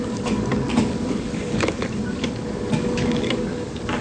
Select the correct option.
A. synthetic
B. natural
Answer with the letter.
A